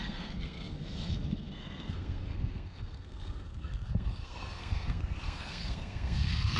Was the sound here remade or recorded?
remade